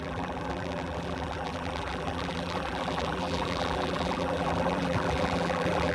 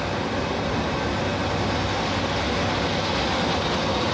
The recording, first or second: second